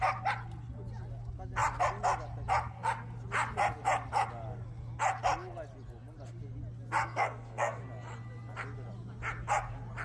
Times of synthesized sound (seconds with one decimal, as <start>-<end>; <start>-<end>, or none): 7.0-7.8